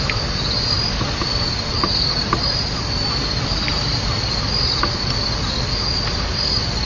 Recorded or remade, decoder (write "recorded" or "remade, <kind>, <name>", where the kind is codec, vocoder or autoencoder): recorded